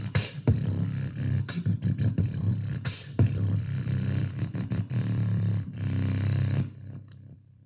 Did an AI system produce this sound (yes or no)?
yes